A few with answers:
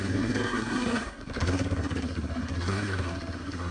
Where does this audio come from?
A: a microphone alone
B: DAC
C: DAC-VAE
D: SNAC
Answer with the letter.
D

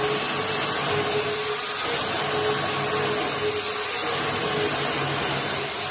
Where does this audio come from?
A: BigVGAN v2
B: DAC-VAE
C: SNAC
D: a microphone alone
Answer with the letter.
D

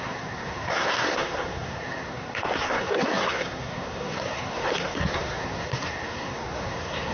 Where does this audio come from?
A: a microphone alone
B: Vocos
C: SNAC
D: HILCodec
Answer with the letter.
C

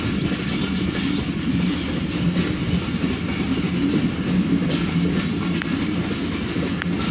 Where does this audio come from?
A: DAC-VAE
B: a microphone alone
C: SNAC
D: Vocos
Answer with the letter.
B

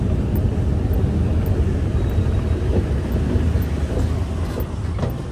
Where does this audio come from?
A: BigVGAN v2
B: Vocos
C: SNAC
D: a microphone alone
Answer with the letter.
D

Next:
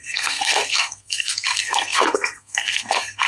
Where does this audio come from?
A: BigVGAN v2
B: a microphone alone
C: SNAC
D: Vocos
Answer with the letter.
C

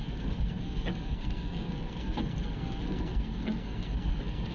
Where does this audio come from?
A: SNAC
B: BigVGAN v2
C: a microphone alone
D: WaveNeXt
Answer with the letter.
A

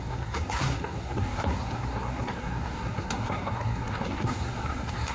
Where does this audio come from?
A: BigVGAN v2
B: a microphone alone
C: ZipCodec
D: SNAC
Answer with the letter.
D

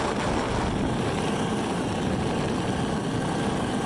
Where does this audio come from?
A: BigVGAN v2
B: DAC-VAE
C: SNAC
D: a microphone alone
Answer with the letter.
D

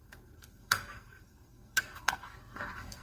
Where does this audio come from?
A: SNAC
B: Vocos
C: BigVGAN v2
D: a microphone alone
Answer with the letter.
A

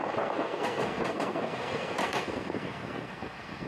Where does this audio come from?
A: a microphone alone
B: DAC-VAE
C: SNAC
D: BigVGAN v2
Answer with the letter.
C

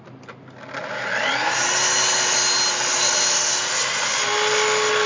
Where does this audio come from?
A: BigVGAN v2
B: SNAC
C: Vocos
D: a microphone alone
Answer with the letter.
D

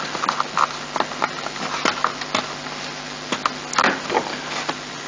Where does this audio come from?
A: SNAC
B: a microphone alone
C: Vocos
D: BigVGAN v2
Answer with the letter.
B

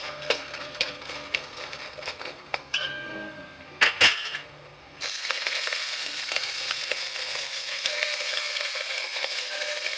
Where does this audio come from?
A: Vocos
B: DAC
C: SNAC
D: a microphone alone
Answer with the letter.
C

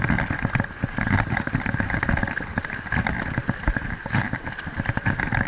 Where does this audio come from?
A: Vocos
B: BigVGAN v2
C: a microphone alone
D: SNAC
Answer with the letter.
C